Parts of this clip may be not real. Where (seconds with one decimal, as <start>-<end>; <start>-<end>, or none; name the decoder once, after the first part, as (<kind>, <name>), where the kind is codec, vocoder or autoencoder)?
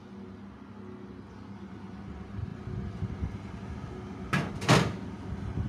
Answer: none